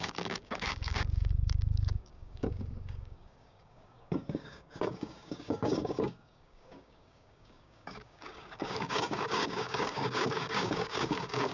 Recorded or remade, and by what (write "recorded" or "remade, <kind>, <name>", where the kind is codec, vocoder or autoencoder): remade, codec, DAC